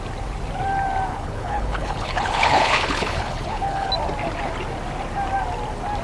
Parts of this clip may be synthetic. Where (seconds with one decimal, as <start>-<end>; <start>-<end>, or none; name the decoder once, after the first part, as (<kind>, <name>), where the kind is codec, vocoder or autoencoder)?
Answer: 1.1-3.9 (codec, HILCodec)